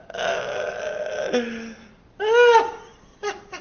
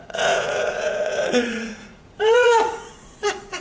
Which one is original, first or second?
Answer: first